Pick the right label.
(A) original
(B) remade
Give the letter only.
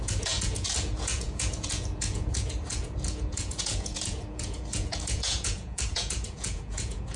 B